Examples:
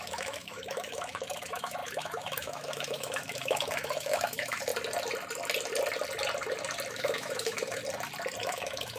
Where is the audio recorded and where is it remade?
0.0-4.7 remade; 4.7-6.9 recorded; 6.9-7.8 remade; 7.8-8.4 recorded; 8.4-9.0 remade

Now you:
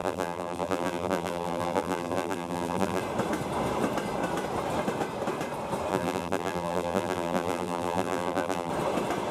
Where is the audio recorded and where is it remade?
0.0-3.0 remade; 3.0-5.9 recorded; 5.9-8.7 remade; 8.7-9.3 recorded

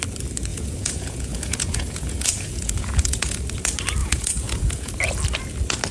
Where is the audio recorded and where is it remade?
0.0-0.5 recorded; 0.5-3.4 remade; 3.4-4.0 recorded; 4.0-4.9 remade; 4.9-5.9 recorded

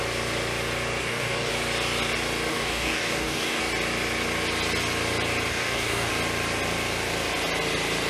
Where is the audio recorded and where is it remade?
0.0-1.0 recorded; 1.0-1.5 remade; 1.5-2.5 recorded; 2.5-3.6 remade; 3.6-5.5 recorded; 5.5-6.1 remade; 6.1-8.1 recorded

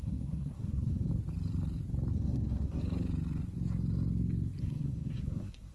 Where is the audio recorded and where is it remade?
0.0-1.1 remade; 1.1-2.1 recorded; 2.1-2.8 remade; 2.8-4.6 recorded; 4.6-5.7 remade